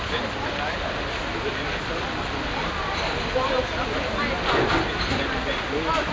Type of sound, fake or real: real